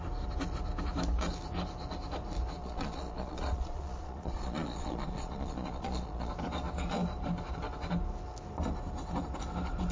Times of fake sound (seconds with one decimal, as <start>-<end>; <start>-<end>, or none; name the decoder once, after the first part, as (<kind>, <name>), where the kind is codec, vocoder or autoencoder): 2.6-6.3 (vocoder, Vocos)